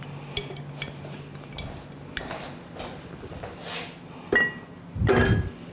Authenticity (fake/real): real